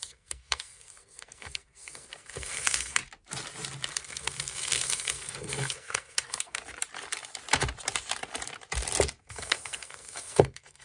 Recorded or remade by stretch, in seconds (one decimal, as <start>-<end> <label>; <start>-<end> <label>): 0.0-3.0 remade; 3.0-3.9 recorded; 3.9-6.6 remade; 6.6-9.2 recorded; 9.2-10.8 remade

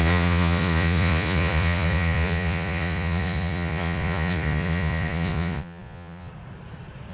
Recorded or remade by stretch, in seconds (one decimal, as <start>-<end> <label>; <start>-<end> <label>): 0.0-6.3 remade; 6.3-7.1 recorded

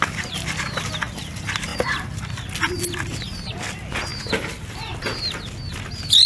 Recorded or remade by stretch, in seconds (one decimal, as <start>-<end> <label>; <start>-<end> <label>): 0.0-4.1 recorded; 4.1-4.8 remade; 4.8-6.3 recorded

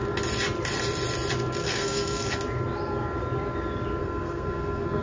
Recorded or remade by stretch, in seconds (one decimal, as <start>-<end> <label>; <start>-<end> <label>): 0.0-1.6 recorded; 1.6-2.4 remade; 2.4-4.0 recorded; 4.0-5.0 remade

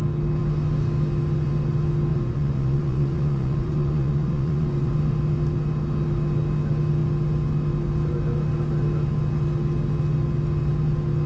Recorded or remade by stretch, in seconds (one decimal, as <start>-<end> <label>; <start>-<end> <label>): 0.0-2.1 recorded; 2.1-4.9 remade; 4.9-11.3 recorded

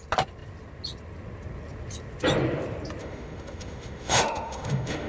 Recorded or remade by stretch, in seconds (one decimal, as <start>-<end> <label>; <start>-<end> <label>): 0.0-3.0 recorded; 3.0-5.1 remade

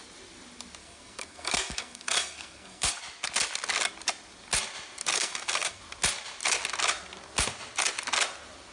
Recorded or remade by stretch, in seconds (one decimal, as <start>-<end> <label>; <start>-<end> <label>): 0.0-0.8 recorded; 0.8-3.0 remade; 3.0-5.1 recorded; 5.1-5.8 remade; 5.8-8.7 recorded